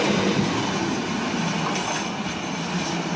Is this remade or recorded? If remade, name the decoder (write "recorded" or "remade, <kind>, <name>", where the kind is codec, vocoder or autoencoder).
recorded